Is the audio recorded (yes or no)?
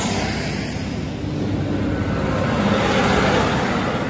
yes